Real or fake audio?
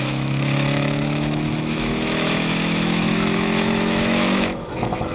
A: fake